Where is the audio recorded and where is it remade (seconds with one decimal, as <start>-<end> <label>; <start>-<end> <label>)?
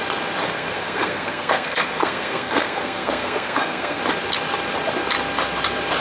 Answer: 0.0-0.4 recorded; 0.4-4.0 remade; 4.0-6.0 recorded